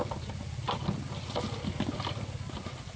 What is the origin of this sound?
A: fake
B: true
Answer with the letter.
B